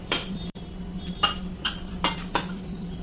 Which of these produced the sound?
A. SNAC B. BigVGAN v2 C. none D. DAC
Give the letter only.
B